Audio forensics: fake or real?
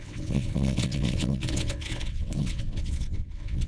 fake